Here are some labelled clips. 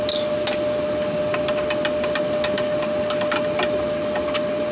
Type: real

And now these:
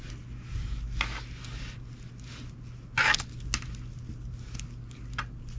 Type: real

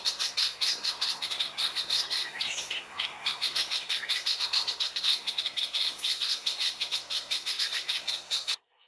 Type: fake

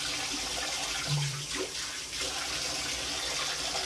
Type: real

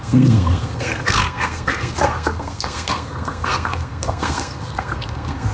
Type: fake